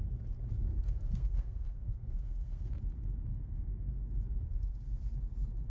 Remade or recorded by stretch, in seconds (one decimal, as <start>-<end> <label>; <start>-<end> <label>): 0.0-0.7 recorded; 0.7-2.7 remade; 2.7-3.3 recorded; 3.3-3.9 remade; 3.9-5.7 recorded